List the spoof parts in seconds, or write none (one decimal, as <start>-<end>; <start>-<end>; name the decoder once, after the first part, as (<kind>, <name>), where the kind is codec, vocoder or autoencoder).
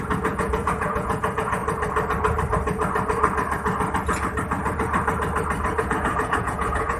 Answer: 0.0-1.6 (vocoder, Vocos); 5.8-7.0